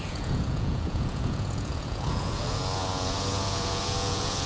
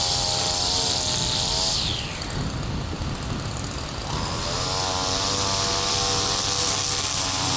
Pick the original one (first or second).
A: second